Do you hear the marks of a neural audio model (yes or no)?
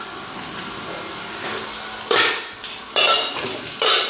yes